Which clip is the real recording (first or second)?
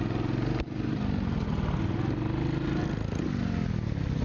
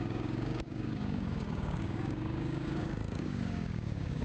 first